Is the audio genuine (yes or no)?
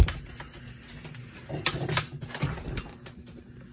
yes